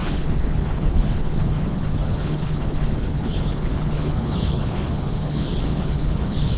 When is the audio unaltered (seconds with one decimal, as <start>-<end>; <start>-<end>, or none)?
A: none